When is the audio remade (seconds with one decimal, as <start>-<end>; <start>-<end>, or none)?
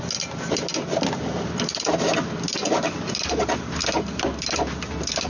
none